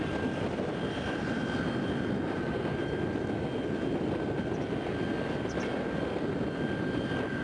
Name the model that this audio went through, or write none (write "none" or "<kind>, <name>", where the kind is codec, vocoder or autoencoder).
none